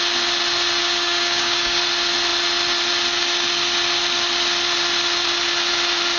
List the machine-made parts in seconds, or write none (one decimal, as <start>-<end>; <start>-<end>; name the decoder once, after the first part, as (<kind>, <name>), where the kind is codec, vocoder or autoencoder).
0.8-1.8 (codec, DAC)